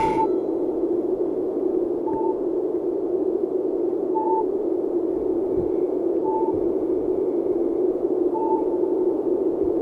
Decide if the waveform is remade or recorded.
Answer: remade